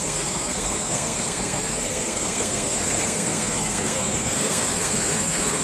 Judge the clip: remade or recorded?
remade